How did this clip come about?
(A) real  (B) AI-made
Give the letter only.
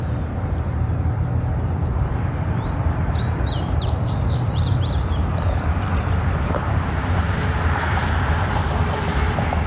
B